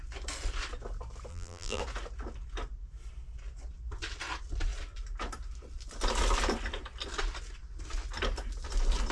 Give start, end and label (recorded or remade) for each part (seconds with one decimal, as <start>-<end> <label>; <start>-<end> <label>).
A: 0.0-1.3 recorded; 1.3-1.8 remade; 1.8-9.1 recorded